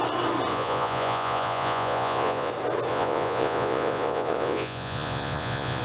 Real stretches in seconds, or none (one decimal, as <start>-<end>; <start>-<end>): 0.0-0.5; 2.5-2.9